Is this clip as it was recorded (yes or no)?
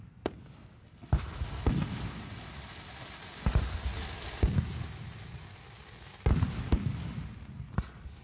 yes